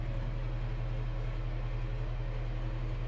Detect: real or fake real